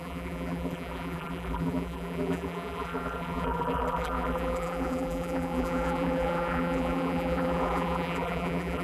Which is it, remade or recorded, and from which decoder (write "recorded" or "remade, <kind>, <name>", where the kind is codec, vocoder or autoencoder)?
remade, vocoder, BigVGAN v2